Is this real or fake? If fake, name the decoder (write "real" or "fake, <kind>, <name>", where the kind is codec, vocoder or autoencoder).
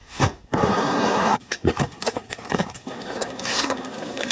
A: fake, codec, SNAC